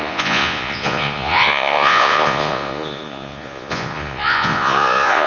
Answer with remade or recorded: remade